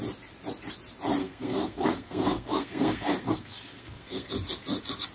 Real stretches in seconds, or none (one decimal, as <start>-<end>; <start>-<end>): 0.0-1.2; 4.3-5.1